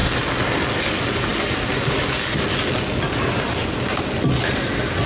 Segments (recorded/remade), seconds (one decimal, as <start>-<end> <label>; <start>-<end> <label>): 0.0-5.1 recorded